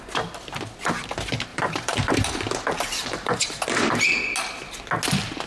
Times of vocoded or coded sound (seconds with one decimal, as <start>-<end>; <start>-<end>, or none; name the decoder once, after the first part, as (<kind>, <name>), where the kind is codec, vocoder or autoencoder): 1.5-3.8 (vocoder, BigVGAN v2)

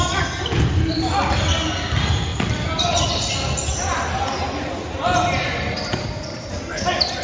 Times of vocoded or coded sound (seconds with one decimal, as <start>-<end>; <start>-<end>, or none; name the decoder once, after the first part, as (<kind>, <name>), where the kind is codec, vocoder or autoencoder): none

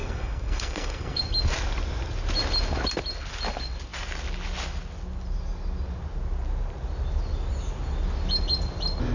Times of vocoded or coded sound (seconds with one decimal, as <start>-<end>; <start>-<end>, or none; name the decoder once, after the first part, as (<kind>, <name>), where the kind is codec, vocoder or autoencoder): 0.0-1.2 (codec, SNAC)

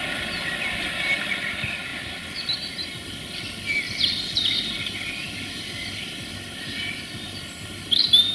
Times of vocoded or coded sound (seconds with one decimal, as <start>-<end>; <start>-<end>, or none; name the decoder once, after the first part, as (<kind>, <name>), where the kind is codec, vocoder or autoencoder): none